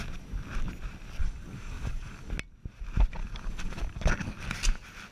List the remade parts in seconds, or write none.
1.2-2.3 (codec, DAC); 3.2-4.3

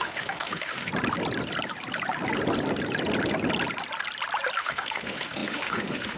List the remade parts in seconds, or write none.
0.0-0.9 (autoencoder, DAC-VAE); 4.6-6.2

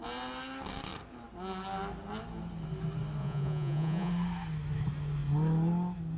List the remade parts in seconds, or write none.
3.2-4.1 (vocoder, Vocos)